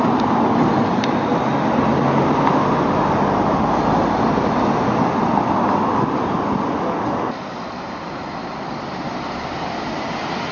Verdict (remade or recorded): recorded